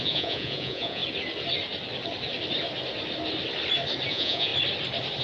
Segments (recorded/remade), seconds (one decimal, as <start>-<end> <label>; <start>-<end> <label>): 0.0-1.0 remade; 1.0-4.1 recorded; 4.1-4.5 remade; 4.5-5.2 recorded